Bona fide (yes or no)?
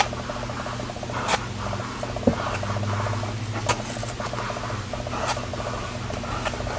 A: yes